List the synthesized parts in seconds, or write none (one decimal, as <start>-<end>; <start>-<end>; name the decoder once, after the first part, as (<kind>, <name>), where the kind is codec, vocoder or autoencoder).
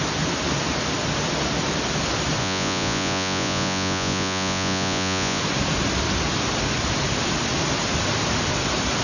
2.4-5.4 (vocoder, Vocos)